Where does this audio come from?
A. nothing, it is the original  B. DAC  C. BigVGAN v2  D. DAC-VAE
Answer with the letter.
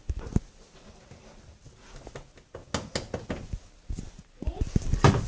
A